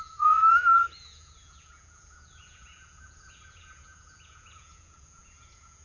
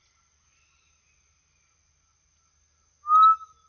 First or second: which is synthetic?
first